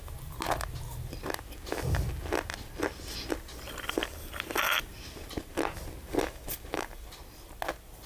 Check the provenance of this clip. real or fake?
real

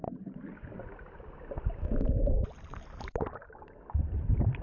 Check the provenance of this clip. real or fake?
real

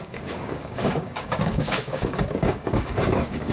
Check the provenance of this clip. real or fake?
fake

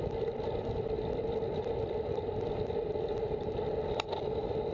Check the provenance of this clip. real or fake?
real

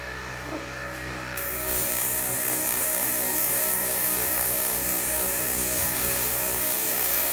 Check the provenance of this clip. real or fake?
fake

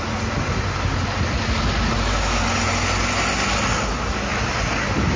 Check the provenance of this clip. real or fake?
real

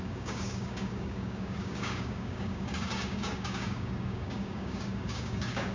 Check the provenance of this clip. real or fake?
fake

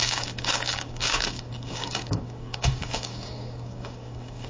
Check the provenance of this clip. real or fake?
fake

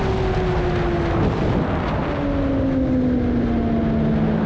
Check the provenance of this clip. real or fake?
real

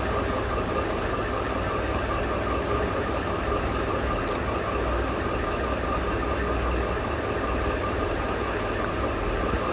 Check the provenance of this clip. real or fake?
real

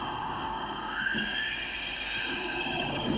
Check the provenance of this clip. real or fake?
fake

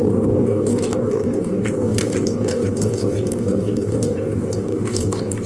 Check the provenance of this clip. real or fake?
fake